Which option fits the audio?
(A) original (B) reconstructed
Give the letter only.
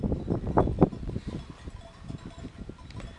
A